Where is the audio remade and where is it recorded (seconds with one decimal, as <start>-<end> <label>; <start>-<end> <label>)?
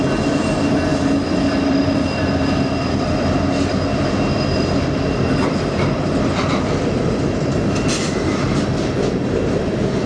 0.0-10.1 remade